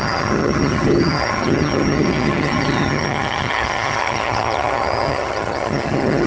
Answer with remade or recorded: remade